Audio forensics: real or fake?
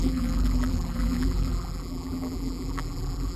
fake